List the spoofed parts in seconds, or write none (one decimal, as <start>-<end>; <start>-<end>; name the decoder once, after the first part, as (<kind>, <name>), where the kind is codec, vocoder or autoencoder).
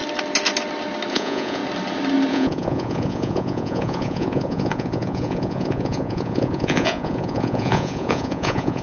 1.1-1.6 (vocoder, Vocos); 2.3-8.8